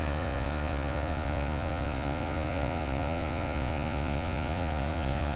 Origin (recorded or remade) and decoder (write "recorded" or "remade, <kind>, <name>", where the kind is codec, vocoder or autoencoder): remade, vocoder, Vocos